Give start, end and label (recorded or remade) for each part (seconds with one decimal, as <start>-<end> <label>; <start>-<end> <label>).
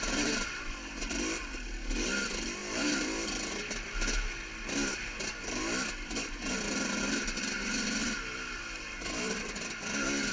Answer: 0.0-1.4 remade; 1.4-2.6 recorded; 2.6-3.5 remade; 3.5-8.0 recorded; 8.0-8.8 remade; 8.8-10.3 recorded